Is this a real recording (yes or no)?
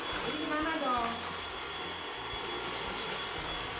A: yes